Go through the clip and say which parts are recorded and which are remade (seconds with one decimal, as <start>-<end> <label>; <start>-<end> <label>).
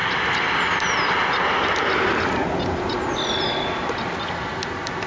0.0-5.1 recorded